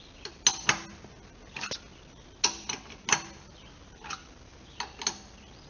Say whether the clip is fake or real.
real